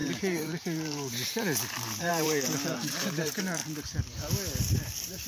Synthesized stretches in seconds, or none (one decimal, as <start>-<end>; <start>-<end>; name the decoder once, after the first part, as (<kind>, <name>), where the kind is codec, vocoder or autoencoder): 0.0-3.6 (vocoder, BigVGAN v2); 4.7-5.3